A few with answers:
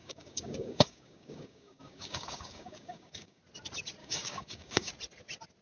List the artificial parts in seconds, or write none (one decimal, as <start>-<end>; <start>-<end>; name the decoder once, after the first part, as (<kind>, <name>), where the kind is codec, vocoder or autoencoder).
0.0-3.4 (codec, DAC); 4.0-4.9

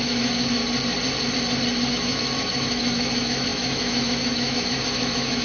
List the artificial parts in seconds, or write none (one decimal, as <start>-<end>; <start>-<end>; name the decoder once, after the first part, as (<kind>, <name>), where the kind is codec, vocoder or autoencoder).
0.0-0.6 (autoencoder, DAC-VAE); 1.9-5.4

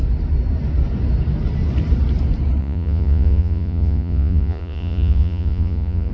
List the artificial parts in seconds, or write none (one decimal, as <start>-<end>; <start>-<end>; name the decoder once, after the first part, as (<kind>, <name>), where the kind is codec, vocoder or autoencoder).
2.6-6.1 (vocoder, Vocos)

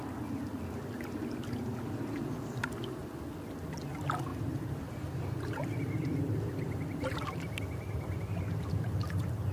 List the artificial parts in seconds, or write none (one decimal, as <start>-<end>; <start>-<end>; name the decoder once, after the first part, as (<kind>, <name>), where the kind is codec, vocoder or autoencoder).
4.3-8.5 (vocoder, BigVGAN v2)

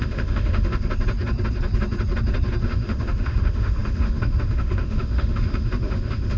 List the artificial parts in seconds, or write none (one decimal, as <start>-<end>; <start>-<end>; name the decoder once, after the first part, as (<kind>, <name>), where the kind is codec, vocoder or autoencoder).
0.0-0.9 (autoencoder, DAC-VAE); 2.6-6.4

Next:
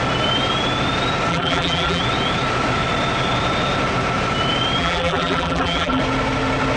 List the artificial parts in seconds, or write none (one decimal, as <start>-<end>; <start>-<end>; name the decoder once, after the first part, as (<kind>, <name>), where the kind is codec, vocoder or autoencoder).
1.3-2.0 (vocoder, BigVGAN v2); 4.8-6.0